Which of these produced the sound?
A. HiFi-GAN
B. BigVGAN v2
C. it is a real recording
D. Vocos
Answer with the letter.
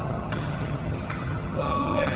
A